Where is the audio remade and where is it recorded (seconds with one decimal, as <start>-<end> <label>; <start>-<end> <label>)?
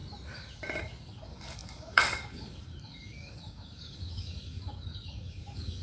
0.0-0.8 recorded; 0.8-5.8 remade